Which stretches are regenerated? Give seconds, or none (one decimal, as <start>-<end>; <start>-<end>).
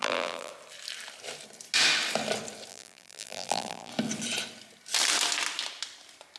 0.0-0.5; 2.7-3.9